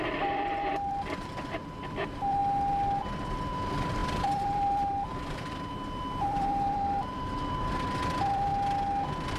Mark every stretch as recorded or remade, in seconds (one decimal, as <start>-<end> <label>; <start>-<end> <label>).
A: 0.0-2.4 remade; 2.4-3.0 recorded; 3.0-8.5 remade; 8.5-9.4 recorded